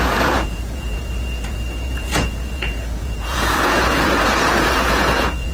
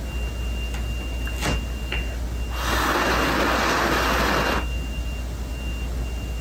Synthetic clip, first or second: first